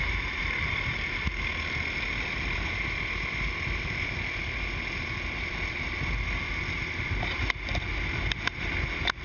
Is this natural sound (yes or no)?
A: yes